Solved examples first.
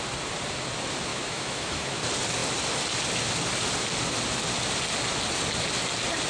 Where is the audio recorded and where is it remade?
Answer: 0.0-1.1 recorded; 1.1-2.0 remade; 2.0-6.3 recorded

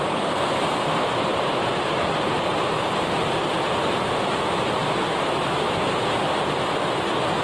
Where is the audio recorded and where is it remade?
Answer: 0.0-1.3 recorded; 1.3-2.4 remade; 2.4-7.4 recorded

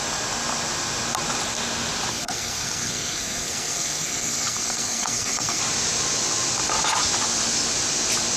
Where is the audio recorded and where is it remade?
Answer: 0.0-2.1 recorded; 2.1-5.6 remade; 5.6-8.4 recorded